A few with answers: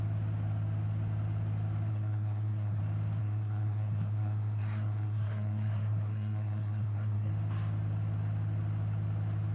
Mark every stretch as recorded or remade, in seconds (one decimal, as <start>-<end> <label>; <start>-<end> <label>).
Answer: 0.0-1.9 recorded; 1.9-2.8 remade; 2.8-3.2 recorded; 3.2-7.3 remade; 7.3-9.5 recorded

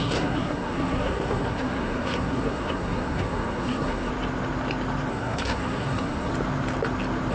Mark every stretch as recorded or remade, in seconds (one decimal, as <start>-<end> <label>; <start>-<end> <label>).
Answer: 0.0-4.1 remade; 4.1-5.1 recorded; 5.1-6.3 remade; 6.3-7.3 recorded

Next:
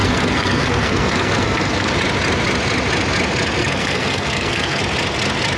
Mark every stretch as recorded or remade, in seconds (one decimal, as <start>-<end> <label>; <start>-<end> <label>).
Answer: 0.0-1.9 remade; 1.9-3.6 recorded; 3.6-4.8 remade; 4.8-5.6 recorded

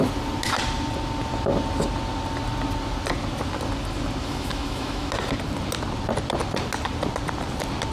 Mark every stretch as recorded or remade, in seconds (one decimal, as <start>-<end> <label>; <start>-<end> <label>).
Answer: 0.0-4.2 recorded; 4.2-5.1 remade; 5.1-7.9 recorded

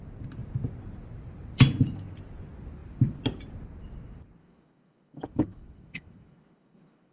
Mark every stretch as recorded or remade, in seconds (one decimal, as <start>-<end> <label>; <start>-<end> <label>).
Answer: 0.0-4.4 recorded; 4.4-7.1 remade